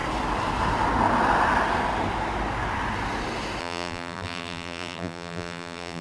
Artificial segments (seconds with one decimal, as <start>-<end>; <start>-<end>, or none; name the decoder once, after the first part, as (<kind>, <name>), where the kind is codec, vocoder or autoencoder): 3.6-6.0 (vocoder, BigVGAN v2)